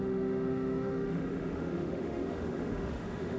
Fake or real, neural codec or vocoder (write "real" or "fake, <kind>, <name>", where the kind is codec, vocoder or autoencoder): fake, autoencoder, DAC-VAE